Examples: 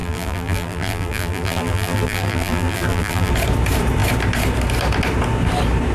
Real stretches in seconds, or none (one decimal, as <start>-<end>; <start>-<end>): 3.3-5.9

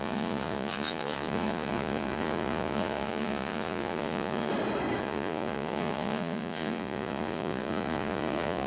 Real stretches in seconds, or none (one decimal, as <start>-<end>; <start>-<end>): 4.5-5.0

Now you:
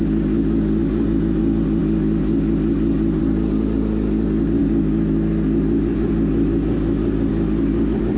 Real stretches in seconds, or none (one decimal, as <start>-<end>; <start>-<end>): 0.0-8.2

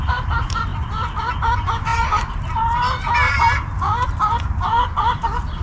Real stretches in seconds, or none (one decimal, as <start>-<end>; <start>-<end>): 0.7-1.2; 1.9-5.6

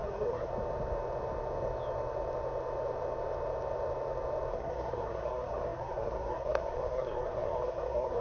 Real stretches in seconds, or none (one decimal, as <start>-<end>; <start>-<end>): 0.5-4.5

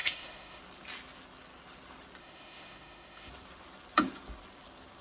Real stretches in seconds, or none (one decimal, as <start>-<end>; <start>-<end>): 0.6-2.2; 3.3-5.0

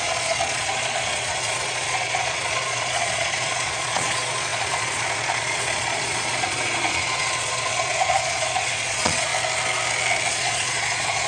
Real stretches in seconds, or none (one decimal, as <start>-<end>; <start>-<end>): 9.3-10.3

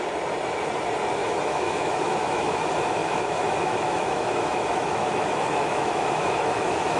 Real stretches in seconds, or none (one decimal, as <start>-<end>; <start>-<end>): 0.0-1.2; 2.6-3.0